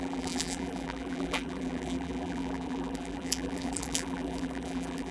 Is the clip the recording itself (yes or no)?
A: no